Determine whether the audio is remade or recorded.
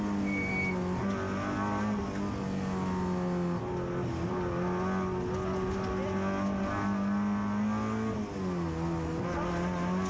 recorded